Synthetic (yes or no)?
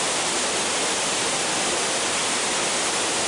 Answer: no